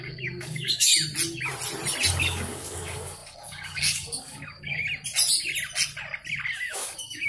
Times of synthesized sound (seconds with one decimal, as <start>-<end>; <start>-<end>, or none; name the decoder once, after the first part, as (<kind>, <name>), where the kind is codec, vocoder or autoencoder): 0.0-0.9 (codec, DAC); 2.1-4.8; 6.7-7.3